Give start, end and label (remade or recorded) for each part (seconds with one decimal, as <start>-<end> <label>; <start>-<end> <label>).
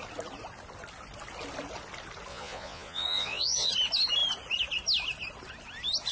0.0-2.3 recorded; 2.3-3.7 remade; 3.7-6.1 recorded